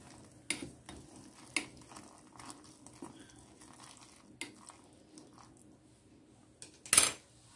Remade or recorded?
recorded